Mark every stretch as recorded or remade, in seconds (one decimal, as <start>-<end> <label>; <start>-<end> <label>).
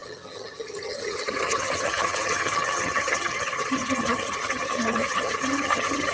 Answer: 0.0-6.1 remade